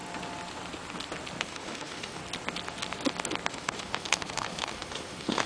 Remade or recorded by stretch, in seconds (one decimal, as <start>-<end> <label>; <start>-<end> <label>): 0.0-1.4 recorded; 1.4-2.2 remade; 2.2-3.5 recorded; 3.5-5.5 remade